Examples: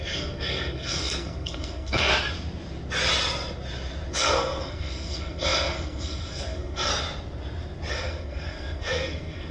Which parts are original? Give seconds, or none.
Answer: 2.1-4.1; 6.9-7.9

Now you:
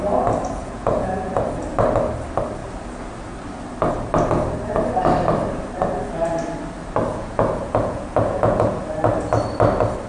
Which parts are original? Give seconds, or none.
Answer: 0.0-0.6; 1.3-7.1; 8.8-10.1

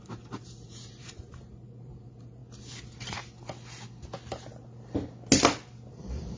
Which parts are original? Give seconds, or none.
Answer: 2.4-5.9

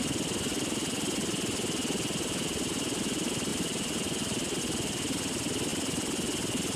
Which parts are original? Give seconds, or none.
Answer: 0.0-0.5; 3.0-3.5; 4.6-5.7

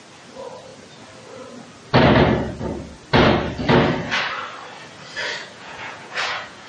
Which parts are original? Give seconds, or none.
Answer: 0.0-5.4